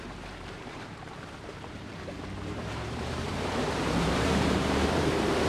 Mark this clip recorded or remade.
remade